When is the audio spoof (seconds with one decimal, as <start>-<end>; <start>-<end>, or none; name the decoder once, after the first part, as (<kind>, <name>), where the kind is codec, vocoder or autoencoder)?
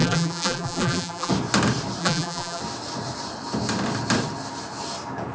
0.0-1.3 (vocoder, BigVGAN v2); 2.0-2.6